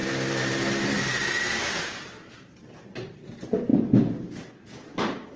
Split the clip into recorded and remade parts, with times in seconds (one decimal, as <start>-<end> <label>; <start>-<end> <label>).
0.0-3.7 remade; 3.7-5.4 recorded